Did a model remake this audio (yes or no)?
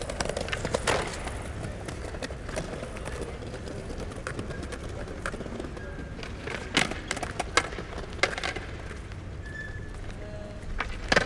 no